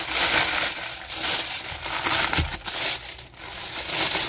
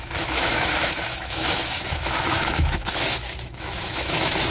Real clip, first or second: first